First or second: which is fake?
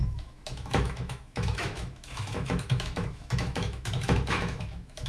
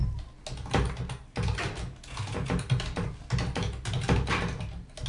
first